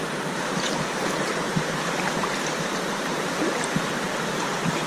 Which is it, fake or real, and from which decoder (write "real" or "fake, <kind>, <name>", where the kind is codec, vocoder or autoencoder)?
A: fake, vocoder, BigVGAN v2